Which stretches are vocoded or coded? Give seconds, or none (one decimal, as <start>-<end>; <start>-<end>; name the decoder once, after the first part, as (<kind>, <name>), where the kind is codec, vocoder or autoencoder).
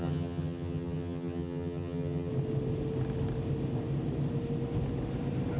0.0-2.3 (vocoder, HiFi-GAN)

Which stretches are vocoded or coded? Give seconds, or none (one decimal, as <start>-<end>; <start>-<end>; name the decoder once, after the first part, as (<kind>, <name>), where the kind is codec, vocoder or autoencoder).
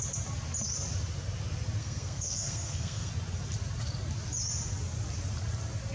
1.8-3.1 (codec, SNAC)